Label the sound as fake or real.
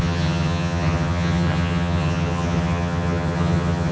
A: fake